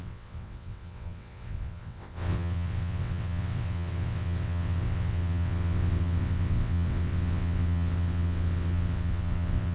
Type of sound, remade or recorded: remade